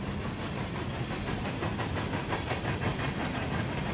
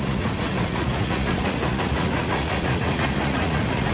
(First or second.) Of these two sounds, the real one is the first